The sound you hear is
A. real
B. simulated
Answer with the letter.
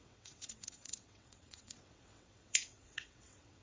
B